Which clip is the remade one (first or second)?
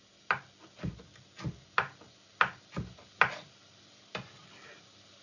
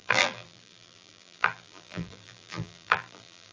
second